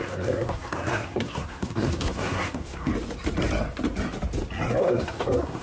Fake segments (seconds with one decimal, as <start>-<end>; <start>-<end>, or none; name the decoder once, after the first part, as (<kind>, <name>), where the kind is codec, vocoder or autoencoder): 0.0-2.9 (codec, SNAC); 4.8-5.6